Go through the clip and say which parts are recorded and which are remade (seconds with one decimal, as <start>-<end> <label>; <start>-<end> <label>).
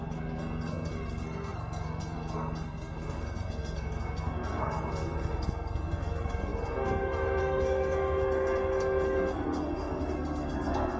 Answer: 0.0-11.0 remade